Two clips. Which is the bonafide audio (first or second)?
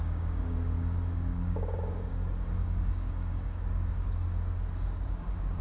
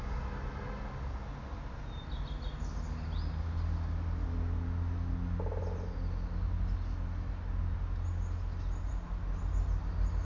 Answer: second